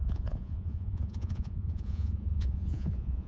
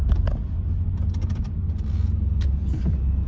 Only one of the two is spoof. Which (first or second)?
first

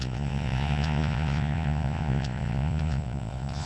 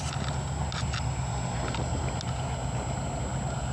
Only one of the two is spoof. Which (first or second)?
first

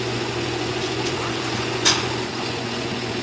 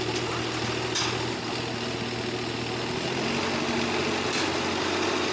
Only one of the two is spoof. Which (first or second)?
first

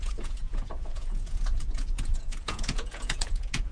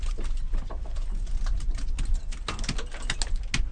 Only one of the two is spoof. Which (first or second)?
first